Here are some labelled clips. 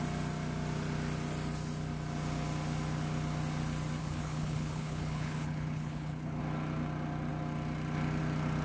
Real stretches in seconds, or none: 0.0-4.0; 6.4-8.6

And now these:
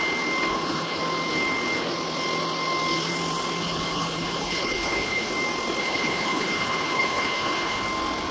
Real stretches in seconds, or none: 0.0-0.5; 1.0-3.6; 5.3-5.8; 7.8-8.3

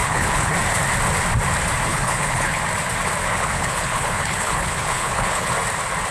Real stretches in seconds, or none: 0.5-1.9; 2.6-3.2; 5.5-6.1